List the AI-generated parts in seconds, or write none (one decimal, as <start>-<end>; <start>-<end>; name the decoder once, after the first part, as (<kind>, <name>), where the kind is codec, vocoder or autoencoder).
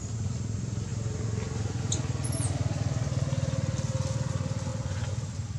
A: none